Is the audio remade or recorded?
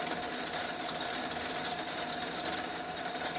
recorded